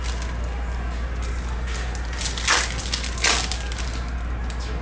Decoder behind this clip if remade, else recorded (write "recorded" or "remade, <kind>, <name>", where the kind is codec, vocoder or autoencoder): recorded